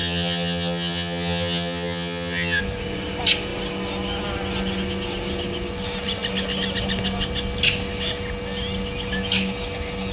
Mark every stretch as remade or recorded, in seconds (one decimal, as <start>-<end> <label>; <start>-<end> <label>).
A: 0.0-2.6 remade; 2.6-10.1 recorded